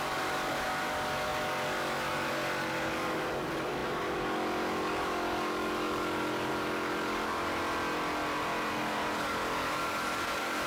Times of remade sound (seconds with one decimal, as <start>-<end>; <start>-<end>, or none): 0.0-7.6; 8.7-10.7